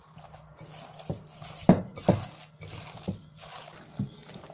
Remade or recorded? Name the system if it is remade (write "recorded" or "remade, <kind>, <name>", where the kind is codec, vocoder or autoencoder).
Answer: recorded